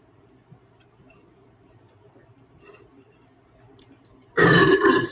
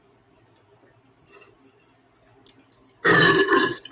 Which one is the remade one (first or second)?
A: first